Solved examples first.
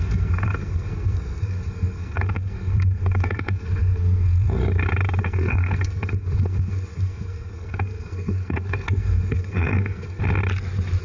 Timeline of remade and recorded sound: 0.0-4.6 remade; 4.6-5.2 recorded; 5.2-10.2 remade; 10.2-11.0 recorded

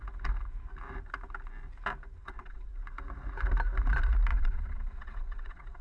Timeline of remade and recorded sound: 0.0-2.2 recorded; 2.2-2.7 remade; 2.7-4.3 recorded; 4.3-5.8 remade

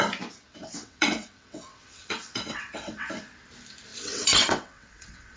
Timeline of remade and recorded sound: 0.0-0.5 recorded; 0.5-3.1 remade; 3.1-3.9 recorded; 3.9-5.4 remade

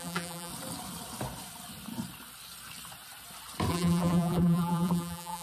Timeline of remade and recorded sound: 0.0-0.5 remade; 0.5-3.7 recorded; 3.7-5.4 remade

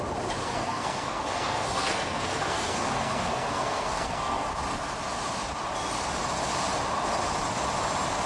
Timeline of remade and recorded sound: 0.0-0.4 recorded; 0.4-4.5 remade; 4.5-8.3 recorded

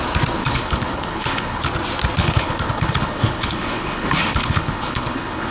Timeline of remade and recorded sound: 0.0-0.4 recorded; 0.4-1.6 remade; 1.6-2.2 recorded; 2.2-5.5 remade